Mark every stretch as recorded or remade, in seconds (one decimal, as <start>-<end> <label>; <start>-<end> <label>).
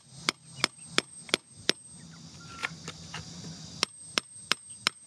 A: 0.0-2.6 recorded; 2.6-3.3 remade; 3.3-5.1 recorded